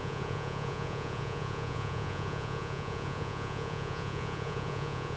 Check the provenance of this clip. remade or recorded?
remade